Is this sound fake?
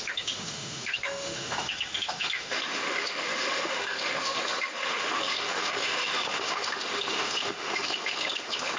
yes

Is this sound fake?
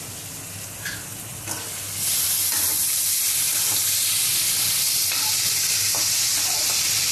no